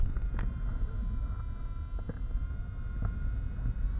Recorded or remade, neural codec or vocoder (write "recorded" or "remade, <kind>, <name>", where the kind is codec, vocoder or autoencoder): recorded